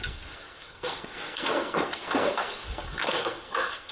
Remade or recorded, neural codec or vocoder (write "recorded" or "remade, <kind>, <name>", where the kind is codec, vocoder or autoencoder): remade, codec, SNAC